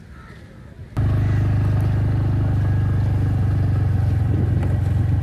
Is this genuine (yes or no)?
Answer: yes